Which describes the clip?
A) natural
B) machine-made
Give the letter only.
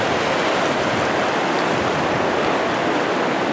A